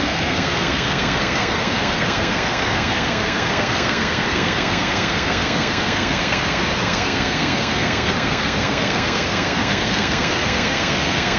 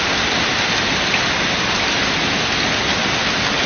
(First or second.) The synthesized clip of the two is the first